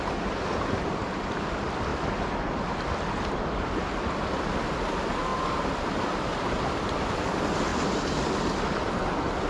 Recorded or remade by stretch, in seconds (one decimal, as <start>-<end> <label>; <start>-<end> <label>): 0.0-9.5 recorded

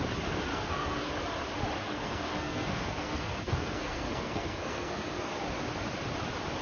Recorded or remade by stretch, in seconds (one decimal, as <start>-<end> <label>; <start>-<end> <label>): 0.0-0.5 recorded; 0.5-1.1 remade; 1.1-1.8 recorded; 1.8-5.3 remade; 5.3-6.6 recorded

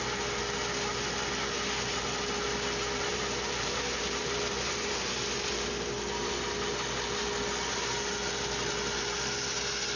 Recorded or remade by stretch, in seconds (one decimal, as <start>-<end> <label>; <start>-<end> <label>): 0.0-3.1 recorded; 3.1-5.2 remade; 5.2-10.0 recorded